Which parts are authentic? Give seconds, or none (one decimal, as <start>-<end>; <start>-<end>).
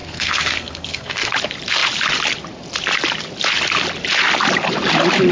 1.3-5.3